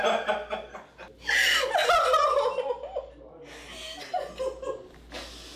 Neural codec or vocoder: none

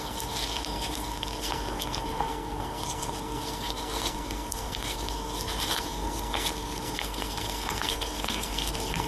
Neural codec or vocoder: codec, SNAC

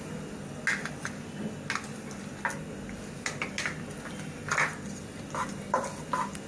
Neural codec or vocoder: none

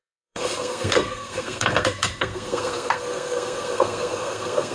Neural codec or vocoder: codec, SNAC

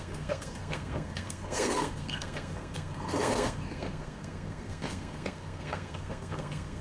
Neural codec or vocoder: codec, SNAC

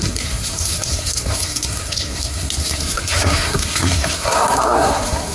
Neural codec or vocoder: codec, SNAC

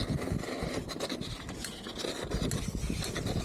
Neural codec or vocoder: none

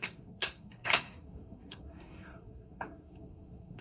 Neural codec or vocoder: codec, SNAC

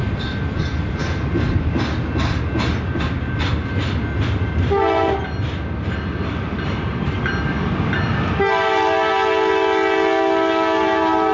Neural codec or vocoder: none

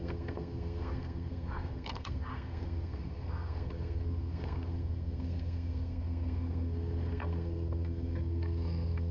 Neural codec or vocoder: codec, SNAC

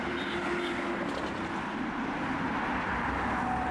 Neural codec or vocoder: none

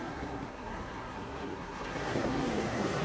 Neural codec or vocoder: codec, SNAC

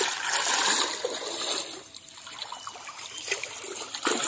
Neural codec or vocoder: none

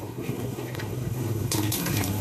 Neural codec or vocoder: codec, SNAC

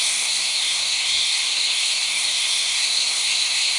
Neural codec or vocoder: codec, SNAC